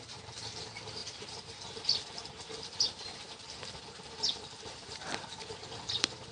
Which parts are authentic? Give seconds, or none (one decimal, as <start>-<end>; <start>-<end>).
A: none